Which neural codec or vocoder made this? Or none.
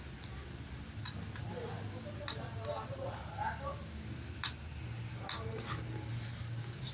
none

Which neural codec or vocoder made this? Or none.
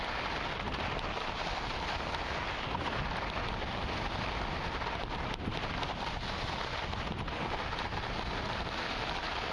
none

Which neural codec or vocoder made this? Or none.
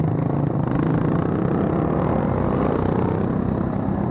none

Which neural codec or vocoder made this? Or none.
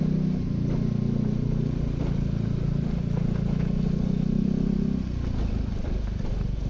none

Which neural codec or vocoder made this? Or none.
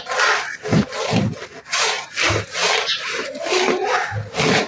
none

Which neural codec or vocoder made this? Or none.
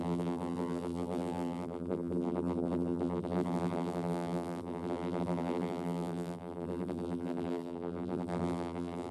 vocoder, BigVGAN v2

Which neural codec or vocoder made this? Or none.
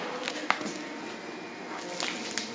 none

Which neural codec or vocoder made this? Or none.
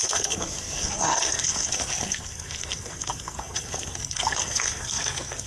codec, SNAC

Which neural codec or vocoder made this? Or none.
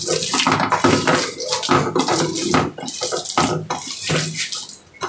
none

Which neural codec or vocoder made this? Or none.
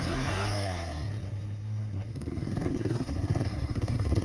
codec, SNAC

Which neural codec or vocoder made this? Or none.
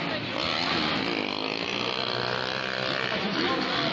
none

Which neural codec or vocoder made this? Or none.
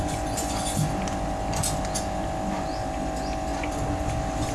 none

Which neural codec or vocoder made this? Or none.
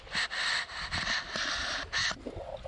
none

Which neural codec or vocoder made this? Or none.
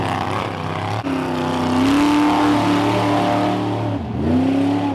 none